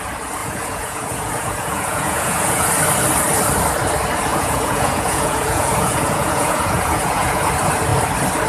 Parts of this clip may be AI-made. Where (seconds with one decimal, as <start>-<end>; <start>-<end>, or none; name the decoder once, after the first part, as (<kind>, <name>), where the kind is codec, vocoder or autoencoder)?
0.4-2.7 (vocoder, Vocos); 4.3-7.5